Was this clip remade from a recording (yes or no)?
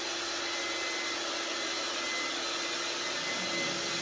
no